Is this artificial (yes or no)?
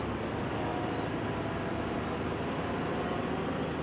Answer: no